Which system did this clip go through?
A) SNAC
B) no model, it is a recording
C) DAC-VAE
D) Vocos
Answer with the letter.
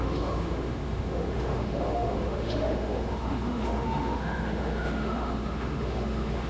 C